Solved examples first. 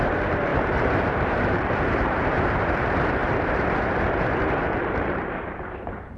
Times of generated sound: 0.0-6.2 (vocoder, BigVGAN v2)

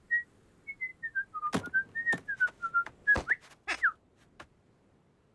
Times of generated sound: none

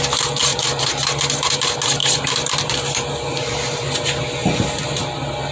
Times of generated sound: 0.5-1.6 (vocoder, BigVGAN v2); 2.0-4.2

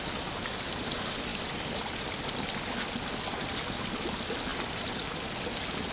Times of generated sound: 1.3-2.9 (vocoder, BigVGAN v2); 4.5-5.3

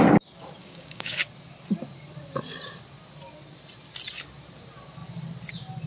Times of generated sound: 0.6-1.2 (codec, DAC)

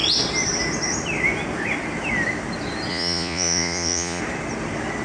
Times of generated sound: 2.9-4.2 (vocoder, Vocos)

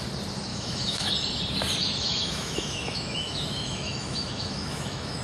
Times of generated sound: 0.5-1.1 (autoencoder, DAC-VAE); 1.8-5.2

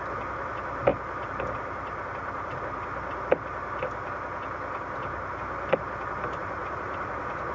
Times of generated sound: 6.4-7.5 (vocoder, Vocos)